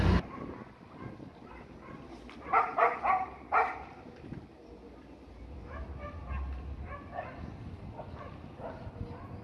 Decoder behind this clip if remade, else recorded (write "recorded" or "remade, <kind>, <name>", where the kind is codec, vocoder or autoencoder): recorded